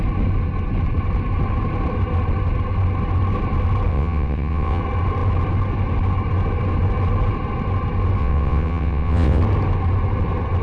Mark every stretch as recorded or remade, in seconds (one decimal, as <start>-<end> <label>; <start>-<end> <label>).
0.0-3.9 recorded; 3.9-4.8 remade; 4.8-8.2 recorded; 8.2-9.4 remade; 9.4-10.6 recorded